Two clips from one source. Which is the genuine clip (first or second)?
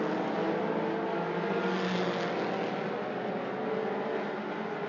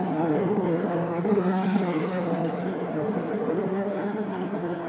first